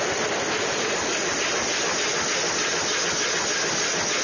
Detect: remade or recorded recorded